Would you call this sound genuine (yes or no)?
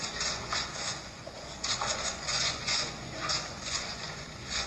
no